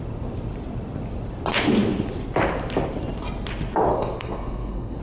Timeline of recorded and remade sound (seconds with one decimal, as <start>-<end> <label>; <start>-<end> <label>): 0.0-3.9 recorded; 3.9-5.0 remade